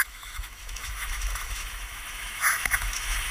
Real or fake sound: fake